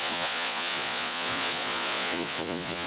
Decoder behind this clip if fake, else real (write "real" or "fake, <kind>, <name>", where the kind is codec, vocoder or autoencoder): fake, vocoder, Vocos